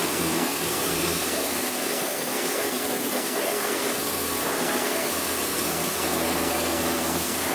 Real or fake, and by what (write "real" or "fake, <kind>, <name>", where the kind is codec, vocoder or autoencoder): fake, codec, SNAC